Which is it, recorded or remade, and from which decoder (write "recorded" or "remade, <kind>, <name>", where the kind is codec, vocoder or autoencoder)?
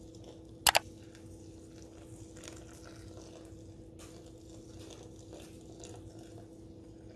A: recorded